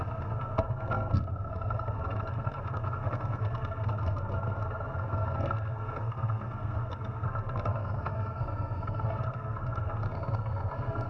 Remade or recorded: remade